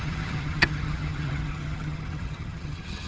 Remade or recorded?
remade